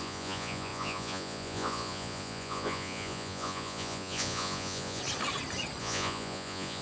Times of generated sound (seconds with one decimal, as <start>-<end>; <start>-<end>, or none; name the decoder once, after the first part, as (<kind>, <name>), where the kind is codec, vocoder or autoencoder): 0.0-5.0 (vocoder, Vocos); 5.8-6.8